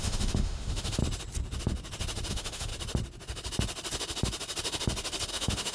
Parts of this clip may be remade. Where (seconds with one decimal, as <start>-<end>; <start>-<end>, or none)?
0.0-1.0; 2.3-2.7; 5.3-5.7